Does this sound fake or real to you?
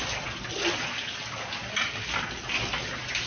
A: real